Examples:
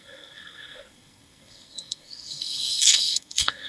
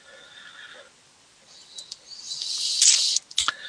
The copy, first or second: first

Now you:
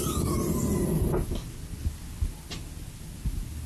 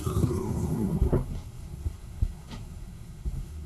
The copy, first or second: second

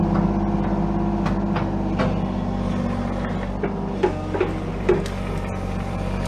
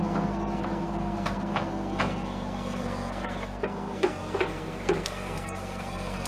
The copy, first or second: second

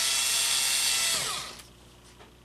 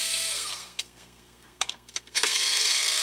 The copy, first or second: second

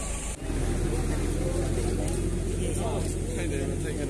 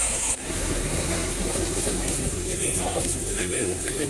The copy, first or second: second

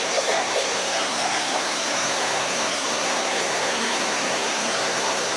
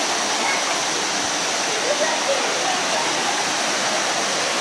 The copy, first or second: first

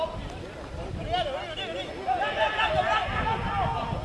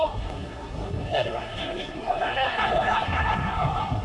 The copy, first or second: second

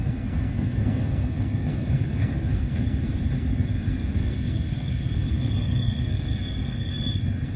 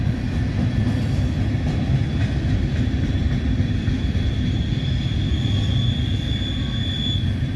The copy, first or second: first